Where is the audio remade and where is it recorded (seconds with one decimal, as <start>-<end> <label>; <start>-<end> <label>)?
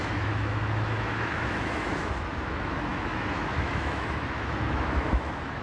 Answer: 0.0-5.6 remade